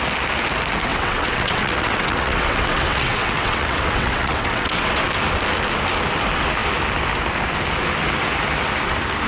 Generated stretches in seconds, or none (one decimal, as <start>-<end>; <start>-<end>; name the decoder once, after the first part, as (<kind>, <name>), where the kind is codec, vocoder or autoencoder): 0.9-5.0 (vocoder, WaveNeXt)